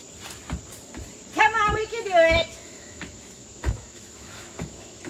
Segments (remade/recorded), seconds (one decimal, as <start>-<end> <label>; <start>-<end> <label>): 0.0-1.8 recorded; 1.8-5.1 remade